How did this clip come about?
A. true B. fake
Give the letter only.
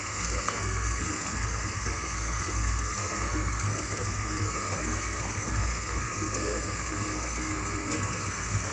B